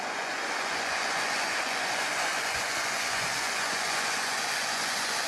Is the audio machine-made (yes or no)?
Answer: yes